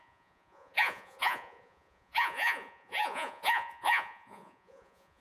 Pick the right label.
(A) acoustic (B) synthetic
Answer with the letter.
B